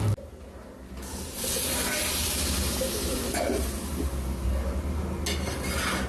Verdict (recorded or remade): recorded